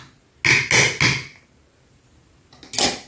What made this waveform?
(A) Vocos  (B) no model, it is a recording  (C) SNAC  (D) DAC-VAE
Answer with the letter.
B